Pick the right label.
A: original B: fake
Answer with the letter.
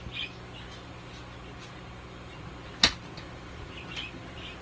A